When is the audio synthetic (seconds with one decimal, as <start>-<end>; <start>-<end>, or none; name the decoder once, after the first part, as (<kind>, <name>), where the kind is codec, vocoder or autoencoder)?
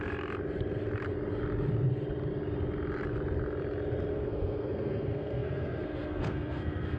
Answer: 4.1-7.0 (codec, SNAC)